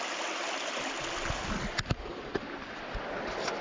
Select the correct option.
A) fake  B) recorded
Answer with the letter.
B